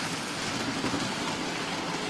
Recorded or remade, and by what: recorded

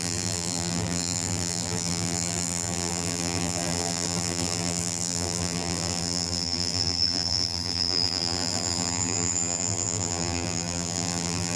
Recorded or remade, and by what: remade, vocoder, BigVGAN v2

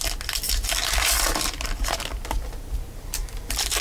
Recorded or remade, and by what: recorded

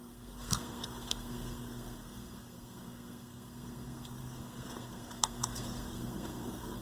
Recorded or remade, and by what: remade, codec, SNAC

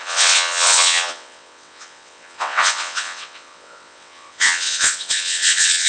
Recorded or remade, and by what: remade, vocoder, WaveNeXt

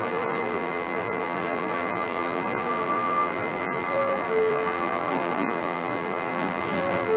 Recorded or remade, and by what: remade, vocoder, BigVGAN v2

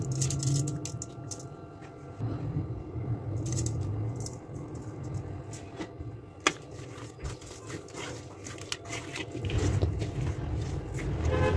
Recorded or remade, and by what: recorded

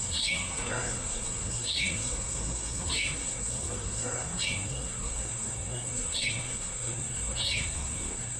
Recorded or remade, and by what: remade, codec, SNAC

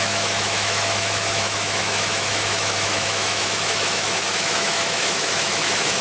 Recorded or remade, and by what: remade, autoencoder, DAC-VAE